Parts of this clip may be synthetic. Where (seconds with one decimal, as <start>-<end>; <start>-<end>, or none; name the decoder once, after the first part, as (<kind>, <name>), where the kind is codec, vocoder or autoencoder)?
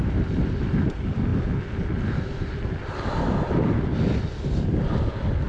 none